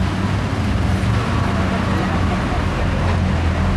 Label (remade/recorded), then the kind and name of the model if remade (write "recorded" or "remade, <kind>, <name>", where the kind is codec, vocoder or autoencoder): recorded